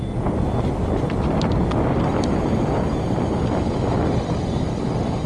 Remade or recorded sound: recorded